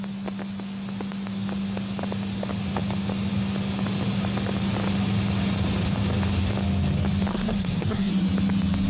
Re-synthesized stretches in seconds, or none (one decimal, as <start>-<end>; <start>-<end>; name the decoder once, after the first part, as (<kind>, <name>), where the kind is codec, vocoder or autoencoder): 7.3-8.1 (codec, SNAC)